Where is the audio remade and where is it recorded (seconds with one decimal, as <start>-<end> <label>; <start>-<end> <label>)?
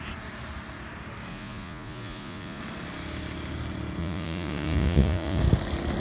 0.0-1.3 recorded; 1.3-2.6 remade; 2.6-4.0 recorded; 4.0-5.4 remade; 5.4-6.0 recorded